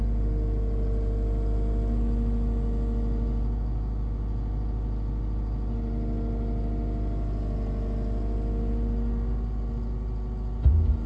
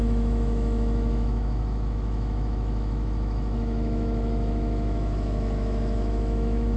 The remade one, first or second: second